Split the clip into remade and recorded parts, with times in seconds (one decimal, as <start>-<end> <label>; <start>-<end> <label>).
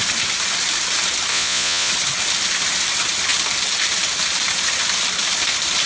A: 0.0-1.3 recorded; 1.3-1.9 remade; 1.9-5.9 recorded